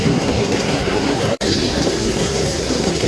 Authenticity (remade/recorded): remade